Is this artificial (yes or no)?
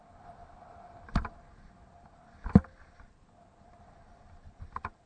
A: no